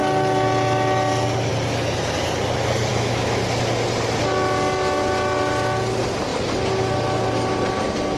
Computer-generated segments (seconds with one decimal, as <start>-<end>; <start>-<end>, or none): 2.9-3.4

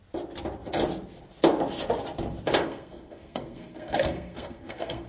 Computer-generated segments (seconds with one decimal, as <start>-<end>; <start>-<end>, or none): 2.6-5.1

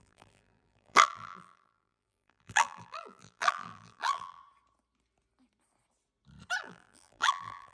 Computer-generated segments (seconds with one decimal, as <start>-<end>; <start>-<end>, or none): 0.0-4.4; 6.6-7.7

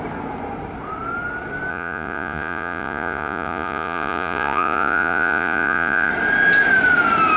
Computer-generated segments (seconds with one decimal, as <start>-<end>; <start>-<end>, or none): 1.7-6.1

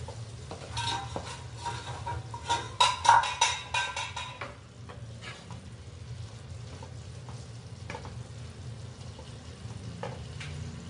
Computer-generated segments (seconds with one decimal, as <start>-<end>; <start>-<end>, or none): none